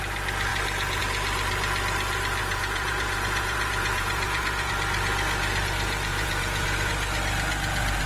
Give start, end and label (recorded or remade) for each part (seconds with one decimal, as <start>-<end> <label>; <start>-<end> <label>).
0.0-2.4 recorded; 2.4-4.7 remade; 4.7-6.1 recorded; 6.1-6.9 remade; 6.9-8.1 recorded